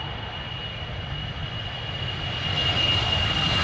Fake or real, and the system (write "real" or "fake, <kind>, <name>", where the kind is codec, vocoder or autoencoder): real